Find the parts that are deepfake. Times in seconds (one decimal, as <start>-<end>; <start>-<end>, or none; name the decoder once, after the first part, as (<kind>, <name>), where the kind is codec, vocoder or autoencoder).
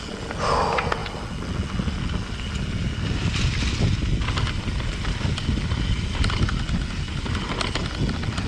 none